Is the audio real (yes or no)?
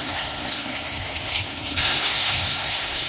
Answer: no